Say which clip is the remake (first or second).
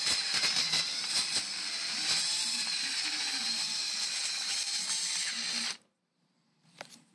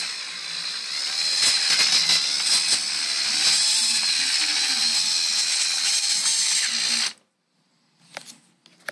first